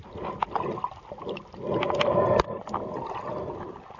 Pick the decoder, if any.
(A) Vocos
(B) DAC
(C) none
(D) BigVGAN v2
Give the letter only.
C